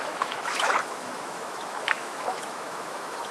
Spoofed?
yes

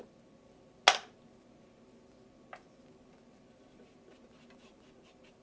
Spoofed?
no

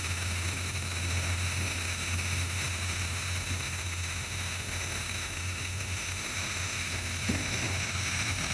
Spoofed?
yes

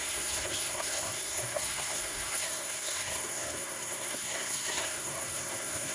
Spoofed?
yes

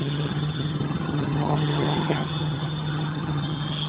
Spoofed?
yes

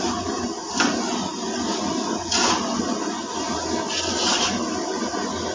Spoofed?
no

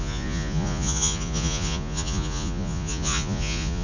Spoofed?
yes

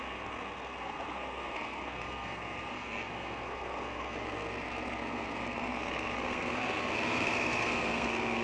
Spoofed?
yes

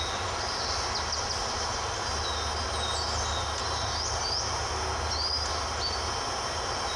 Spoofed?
no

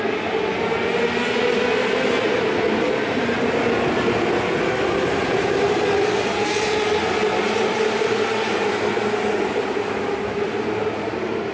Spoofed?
no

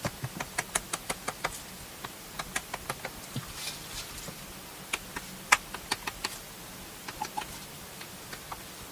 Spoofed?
yes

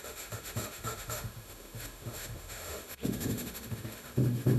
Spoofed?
yes